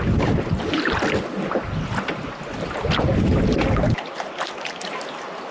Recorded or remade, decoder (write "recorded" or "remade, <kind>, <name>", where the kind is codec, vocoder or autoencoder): recorded